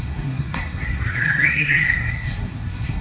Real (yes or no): no